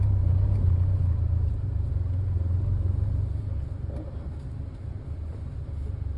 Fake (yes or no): no